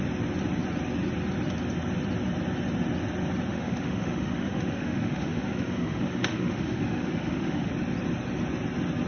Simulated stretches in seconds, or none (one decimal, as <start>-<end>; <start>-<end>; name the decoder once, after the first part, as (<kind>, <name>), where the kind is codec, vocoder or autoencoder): 3.5-7.7 (autoencoder, DAC-VAE)